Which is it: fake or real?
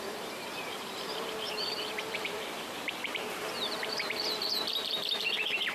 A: fake